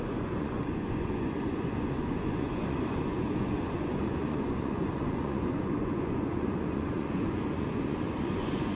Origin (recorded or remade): remade